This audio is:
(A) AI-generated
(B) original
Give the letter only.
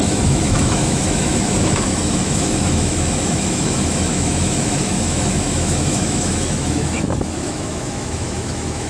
A